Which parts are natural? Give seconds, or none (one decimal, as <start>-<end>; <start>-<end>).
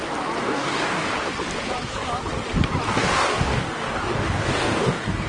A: 0.0-0.4; 1.1-2.9